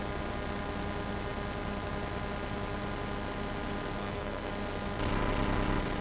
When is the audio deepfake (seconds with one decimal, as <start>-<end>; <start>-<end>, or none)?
4.0-4.5